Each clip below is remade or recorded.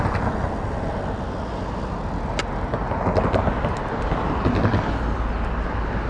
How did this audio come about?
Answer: recorded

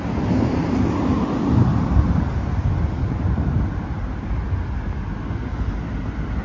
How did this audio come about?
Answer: recorded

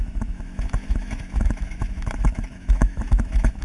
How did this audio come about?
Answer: remade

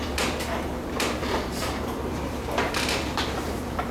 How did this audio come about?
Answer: remade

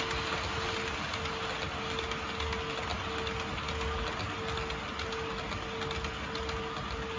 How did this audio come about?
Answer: recorded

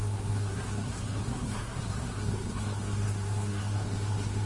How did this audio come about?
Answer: remade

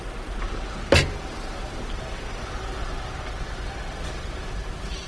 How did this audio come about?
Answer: recorded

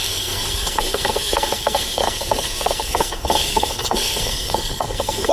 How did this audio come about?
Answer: remade